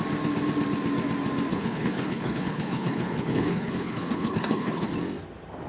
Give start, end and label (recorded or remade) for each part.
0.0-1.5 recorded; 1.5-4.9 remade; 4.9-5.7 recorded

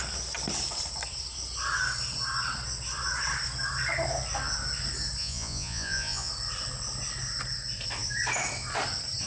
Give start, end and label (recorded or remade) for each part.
0.0-5.2 recorded; 5.2-6.3 remade; 6.3-9.3 recorded

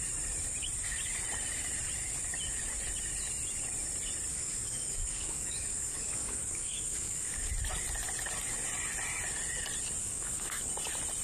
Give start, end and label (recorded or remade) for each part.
0.0-4.3 recorded; 4.3-7.5 remade; 7.5-10.0 recorded; 10.0-10.7 remade; 10.7-11.2 recorded

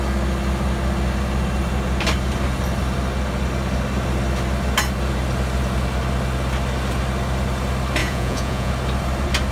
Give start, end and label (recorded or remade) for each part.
0.0-8.0 recorded; 8.0-8.7 remade; 8.7-9.5 recorded

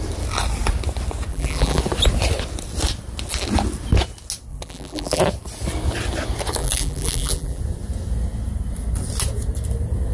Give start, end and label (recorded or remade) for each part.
0.0-1.3 recorded; 1.3-1.8 remade; 1.8-4.5 recorded; 4.5-5.2 remade; 5.2-6.6 recorded; 6.6-7.6 remade; 7.6-10.1 recorded